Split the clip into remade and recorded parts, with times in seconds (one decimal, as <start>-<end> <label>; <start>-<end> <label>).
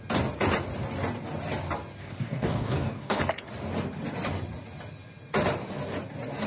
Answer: 0.0-2.0 recorded; 2.0-3.2 remade; 3.2-6.5 recorded